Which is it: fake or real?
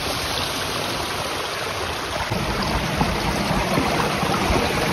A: real